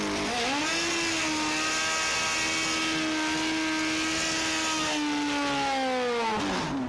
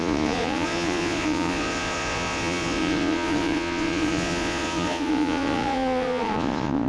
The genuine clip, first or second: first